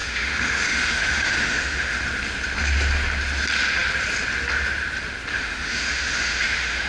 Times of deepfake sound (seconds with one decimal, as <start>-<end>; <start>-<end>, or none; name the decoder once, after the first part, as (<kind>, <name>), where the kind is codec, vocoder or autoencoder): 0.0-2.0 (autoencoder, DAC-VAE); 5.3-6.9